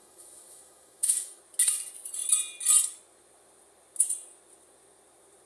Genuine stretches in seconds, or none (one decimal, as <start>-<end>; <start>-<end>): 1.4-5.5